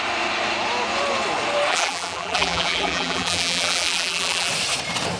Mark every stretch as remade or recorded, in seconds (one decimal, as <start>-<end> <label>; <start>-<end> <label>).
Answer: 0.0-1.7 recorded; 1.7-4.5 remade; 4.5-5.2 recorded